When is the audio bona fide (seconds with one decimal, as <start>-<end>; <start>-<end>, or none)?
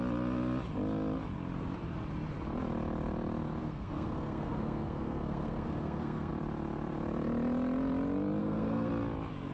0.0-3.6; 6.3-8.4; 8.9-9.5